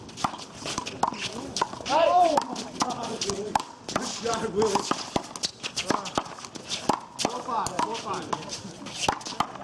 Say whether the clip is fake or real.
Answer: real